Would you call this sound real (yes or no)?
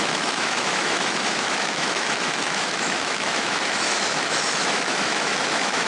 no